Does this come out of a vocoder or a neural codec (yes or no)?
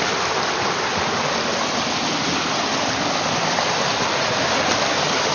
no